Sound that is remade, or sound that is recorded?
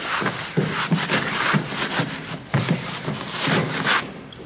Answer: recorded